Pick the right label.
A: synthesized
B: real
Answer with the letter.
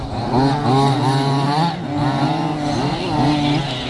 B